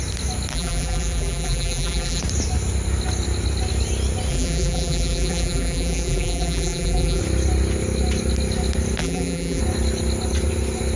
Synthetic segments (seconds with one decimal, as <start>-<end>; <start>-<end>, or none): 0.5-2.2; 4.3-7.2; 9.0-9.6